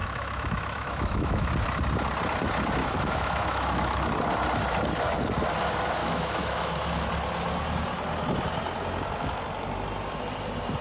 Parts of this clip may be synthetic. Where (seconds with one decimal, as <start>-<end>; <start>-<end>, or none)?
0.0-1.5; 2.8-4.1; 6.0-7.1